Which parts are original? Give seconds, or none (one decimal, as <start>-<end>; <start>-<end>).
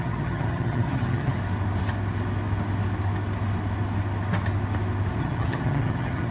1.4-5.2